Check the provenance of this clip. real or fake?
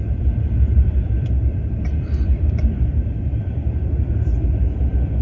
fake